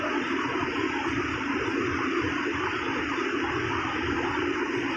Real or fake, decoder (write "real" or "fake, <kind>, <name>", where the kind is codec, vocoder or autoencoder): real